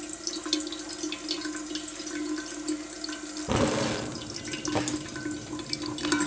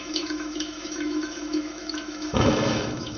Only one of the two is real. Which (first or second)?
first